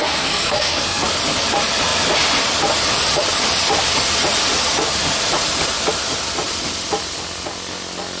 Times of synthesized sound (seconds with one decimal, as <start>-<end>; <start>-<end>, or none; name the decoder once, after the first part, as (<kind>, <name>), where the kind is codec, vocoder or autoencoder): 0.0-1.1 (codec, SNAC)